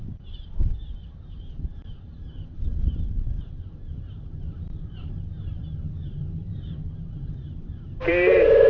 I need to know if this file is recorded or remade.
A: remade